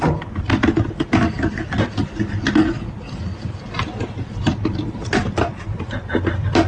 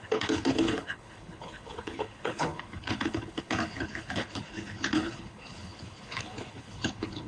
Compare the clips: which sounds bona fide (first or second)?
first